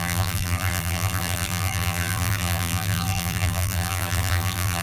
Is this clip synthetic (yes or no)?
yes